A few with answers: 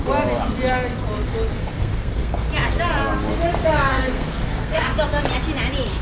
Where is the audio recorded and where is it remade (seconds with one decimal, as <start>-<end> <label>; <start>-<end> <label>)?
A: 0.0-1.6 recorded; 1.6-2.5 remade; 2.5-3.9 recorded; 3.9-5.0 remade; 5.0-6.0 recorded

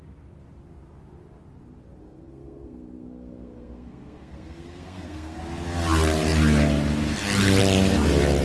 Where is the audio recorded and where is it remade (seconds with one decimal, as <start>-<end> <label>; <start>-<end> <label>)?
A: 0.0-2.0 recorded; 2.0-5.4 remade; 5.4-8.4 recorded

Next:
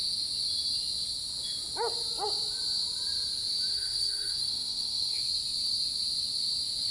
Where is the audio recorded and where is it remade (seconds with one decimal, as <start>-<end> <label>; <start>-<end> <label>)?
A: 0.0-3.7 recorded; 3.7-5.2 remade; 5.2-6.9 recorded